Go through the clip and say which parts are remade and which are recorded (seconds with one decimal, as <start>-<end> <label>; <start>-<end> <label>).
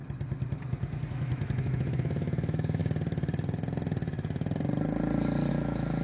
0.0-1.1 recorded; 1.1-2.8 remade; 2.8-5.5 recorded; 5.5-6.0 remade